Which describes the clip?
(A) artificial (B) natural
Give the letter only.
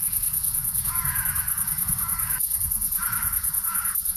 A